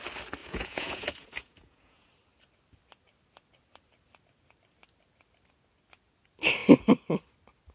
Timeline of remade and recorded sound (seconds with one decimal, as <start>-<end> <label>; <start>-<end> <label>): 0.0-0.4 recorded; 0.4-2.1 remade; 2.1-7.7 recorded